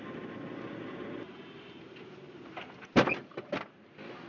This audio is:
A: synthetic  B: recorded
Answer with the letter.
B